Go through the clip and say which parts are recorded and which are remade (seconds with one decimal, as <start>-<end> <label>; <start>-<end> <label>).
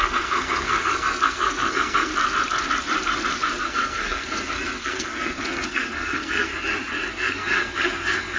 0.0-2.1 remade; 2.1-3.6 recorded; 3.6-6.5 remade; 6.5-7.1 recorded; 7.1-8.4 remade